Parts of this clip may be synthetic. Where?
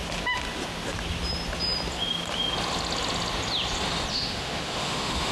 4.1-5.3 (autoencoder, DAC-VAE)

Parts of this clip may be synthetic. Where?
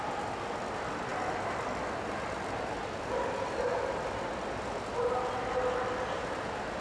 none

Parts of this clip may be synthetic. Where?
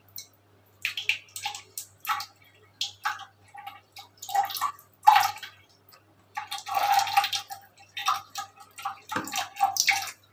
none